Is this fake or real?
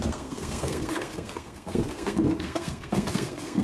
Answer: fake